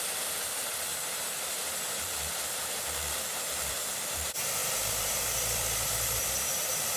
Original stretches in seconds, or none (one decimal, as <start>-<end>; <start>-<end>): none